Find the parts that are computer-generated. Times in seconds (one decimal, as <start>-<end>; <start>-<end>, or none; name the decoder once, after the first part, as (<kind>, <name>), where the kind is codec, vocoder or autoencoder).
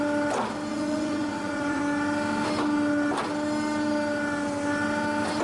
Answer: 0.7-1.8 (vocoder, Vocos)